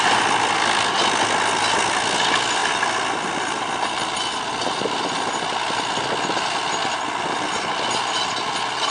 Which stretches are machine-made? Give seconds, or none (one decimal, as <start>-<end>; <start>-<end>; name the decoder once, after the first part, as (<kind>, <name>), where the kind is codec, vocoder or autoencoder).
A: none